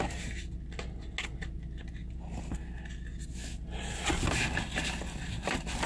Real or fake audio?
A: real